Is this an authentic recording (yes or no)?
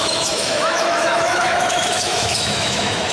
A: no